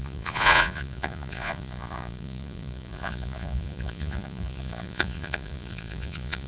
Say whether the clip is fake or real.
fake